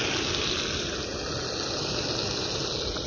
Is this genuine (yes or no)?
yes